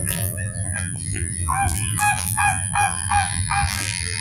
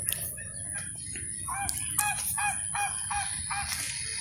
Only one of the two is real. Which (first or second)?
second